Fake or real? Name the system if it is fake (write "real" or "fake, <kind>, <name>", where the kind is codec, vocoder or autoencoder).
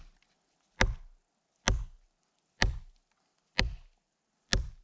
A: real